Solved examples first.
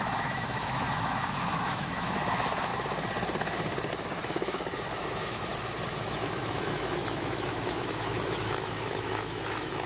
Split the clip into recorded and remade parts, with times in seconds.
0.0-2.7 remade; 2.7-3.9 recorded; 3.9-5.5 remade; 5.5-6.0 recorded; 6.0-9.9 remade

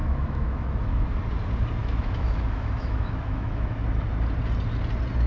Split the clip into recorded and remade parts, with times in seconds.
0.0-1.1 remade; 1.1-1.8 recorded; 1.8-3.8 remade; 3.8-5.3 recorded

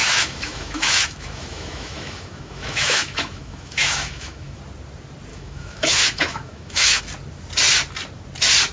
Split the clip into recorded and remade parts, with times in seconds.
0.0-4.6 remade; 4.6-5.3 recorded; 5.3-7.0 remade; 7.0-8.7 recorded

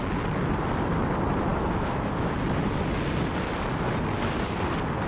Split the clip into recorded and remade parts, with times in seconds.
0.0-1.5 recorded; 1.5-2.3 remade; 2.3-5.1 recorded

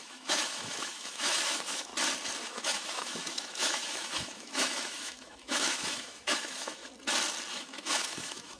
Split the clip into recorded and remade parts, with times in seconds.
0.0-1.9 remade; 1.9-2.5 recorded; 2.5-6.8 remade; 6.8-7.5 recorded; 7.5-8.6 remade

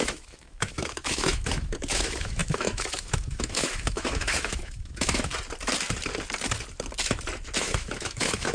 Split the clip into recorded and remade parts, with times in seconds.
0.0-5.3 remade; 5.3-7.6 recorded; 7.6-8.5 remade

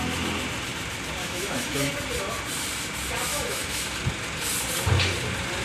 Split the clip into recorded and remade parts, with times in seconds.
0.0-1.2 recorded; 1.2-1.9 remade; 1.9-3.3 recorded; 3.3-3.8 remade; 3.8-5.6 recorded

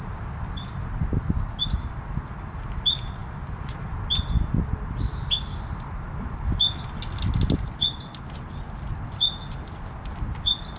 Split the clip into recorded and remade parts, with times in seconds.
0.0-10.8 recorded